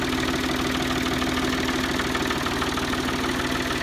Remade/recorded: recorded